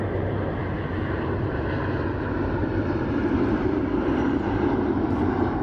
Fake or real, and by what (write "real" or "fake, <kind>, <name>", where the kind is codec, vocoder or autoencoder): fake, vocoder, BigVGAN v2